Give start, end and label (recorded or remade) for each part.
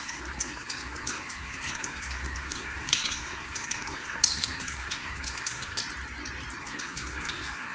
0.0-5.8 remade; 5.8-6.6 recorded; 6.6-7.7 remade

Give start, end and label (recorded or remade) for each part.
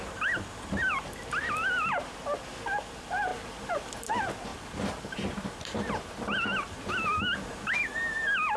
0.0-1.4 recorded; 1.4-2.2 remade; 2.2-3.3 recorded; 3.3-4.1 remade; 4.1-4.5 recorded; 4.5-6.9 remade; 6.9-8.6 recorded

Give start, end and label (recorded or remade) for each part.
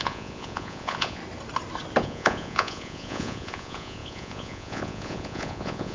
0.0-1.2 remade; 1.2-2.0 recorded; 2.0-5.9 remade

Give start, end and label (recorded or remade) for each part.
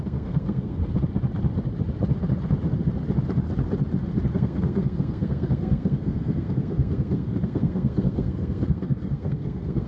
0.0-0.8 remade; 0.8-4.3 recorded; 4.3-9.9 remade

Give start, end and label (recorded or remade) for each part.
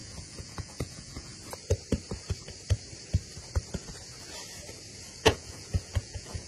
0.0-1.3 remade; 1.3-5.2 recorded; 5.2-6.5 remade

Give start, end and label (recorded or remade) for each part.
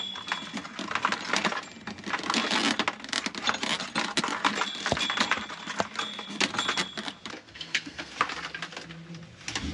0.0-7.5 recorded; 7.5-8.1 remade; 8.1-9.7 recorded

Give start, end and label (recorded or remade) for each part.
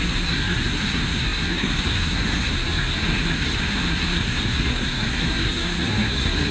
0.0-6.5 remade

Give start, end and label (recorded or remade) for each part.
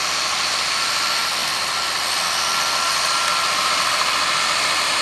0.0-1.4 remade; 1.4-3.5 recorded; 3.5-5.0 remade